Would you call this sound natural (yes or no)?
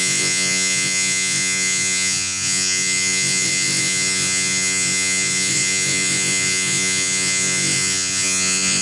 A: no